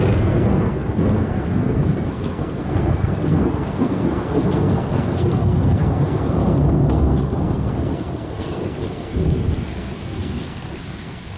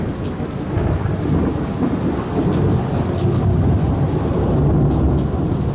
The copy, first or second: first